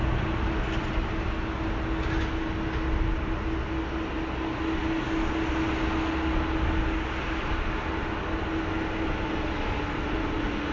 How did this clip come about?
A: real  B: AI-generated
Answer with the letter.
A